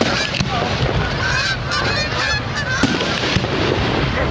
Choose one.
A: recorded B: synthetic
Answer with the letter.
A